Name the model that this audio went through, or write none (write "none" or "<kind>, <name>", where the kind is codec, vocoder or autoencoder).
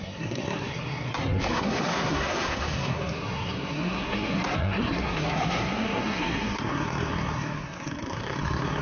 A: codec, SNAC